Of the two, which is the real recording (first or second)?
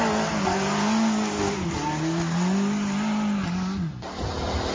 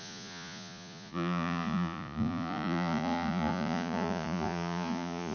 first